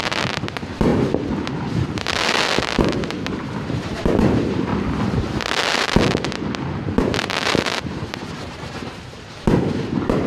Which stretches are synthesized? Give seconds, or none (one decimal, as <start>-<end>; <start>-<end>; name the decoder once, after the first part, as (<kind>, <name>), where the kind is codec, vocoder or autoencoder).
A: 0.0-0.9 (vocoder, BigVGAN v2); 2.8-4.7; 6.9-10.3